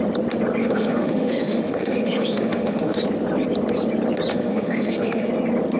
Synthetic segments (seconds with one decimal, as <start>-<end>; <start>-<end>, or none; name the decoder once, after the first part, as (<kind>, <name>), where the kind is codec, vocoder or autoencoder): 0.6-3.0 (autoencoder, DAC-VAE); 4.3-5.3